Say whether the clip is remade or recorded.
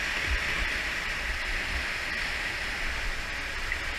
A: recorded